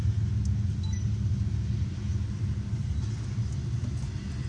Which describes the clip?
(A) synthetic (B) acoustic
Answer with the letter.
B